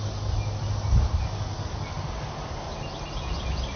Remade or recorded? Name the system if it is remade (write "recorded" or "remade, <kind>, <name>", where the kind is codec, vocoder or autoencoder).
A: recorded